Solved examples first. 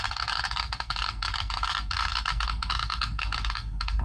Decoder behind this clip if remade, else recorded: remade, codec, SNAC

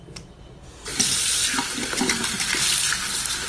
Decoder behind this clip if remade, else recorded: recorded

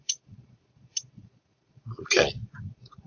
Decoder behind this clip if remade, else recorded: remade, vocoder, Vocos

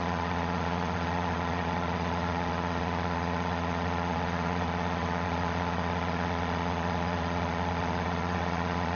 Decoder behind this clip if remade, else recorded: remade, vocoder, Vocos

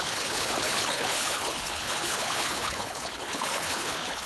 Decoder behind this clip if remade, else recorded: remade, codec, HILCodec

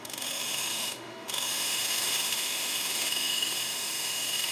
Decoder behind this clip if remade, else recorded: remade, autoencoder, DAC-VAE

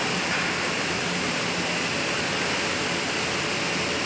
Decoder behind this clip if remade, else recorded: recorded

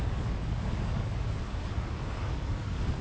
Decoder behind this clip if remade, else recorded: remade, codec, DAC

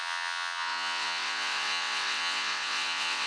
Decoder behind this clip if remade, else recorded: remade, vocoder, WaveNeXt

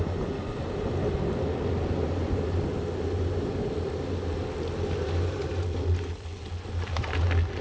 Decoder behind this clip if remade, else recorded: recorded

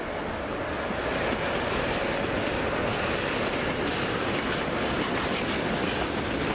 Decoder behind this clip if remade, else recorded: recorded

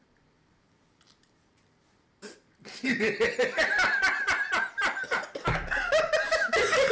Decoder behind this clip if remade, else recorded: remade, vocoder, BigVGAN v2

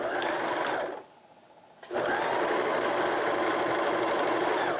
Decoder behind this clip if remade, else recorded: recorded